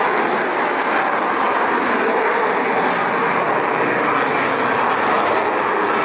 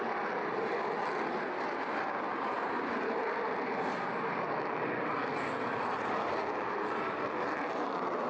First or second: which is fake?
second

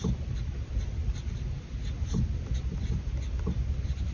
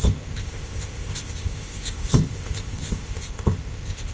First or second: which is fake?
second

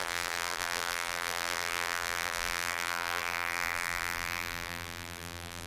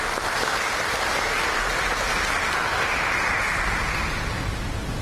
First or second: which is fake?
first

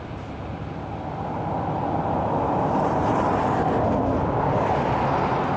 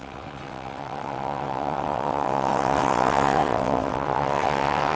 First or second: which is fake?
second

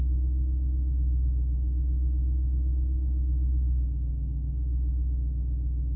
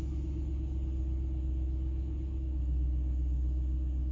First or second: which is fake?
first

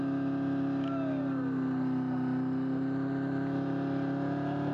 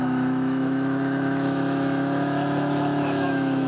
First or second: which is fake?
second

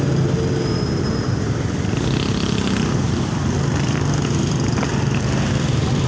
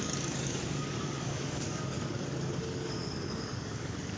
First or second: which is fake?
second